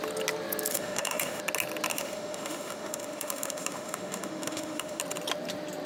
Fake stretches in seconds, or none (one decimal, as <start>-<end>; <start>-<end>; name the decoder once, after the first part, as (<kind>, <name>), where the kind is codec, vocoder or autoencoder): 0.7-1.4 (autoencoder, DAC-VAE); 1.9-5.0

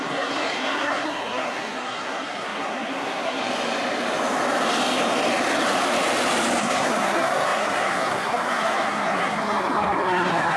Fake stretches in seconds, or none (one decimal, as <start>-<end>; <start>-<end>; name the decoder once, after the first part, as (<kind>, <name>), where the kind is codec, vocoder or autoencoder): 0.0-3.4 (codec, SNAC); 6.6-10.6

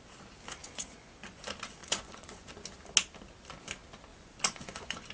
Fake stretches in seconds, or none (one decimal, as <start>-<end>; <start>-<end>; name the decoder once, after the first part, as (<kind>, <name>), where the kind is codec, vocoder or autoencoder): 0.6-1.4 (vocoder, Vocos); 1.8-2.5; 4.1-5.1

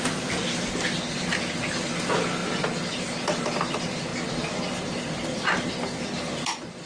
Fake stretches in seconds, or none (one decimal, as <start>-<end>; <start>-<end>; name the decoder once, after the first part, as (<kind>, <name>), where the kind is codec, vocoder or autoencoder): none

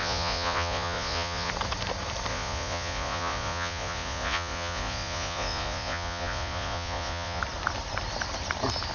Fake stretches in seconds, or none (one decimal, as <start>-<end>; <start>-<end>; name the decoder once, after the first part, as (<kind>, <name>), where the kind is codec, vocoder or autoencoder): 0.0-1.5 (vocoder, Vocos); 2.3-7.4

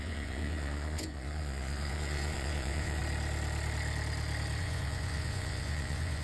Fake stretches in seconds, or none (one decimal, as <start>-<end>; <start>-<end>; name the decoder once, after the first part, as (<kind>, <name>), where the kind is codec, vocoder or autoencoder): 0.0-3.0 (vocoder, Vocos); 4.6-6.2

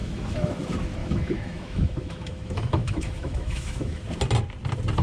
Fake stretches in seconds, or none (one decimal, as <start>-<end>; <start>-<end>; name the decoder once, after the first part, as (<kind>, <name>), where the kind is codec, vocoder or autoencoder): 0.0-0.6 (autoencoder, DAC-VAE); 1.0-4.0